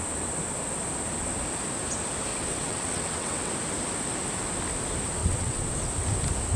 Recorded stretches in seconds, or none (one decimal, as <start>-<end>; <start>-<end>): 0.0-2.3; 3.5-5.2; 5.7-6.6